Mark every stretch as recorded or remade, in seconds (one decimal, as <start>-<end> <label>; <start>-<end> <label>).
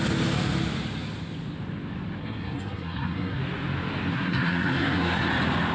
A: 0.0-2.2 recorded; 2.2-3.4 remade; 3.4-4.1 recorded; 4.1-5.3 remade; 5.3-5.7 recorded